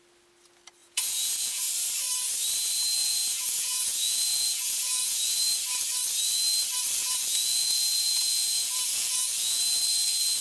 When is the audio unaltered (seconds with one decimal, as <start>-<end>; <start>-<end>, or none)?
0.0-0.8; 1.7-3.0; 5.4-7.0; 9.6-10.4